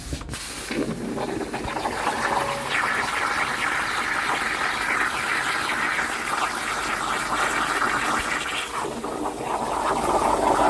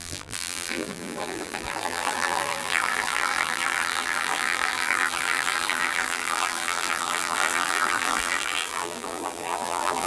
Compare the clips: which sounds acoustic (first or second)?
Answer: first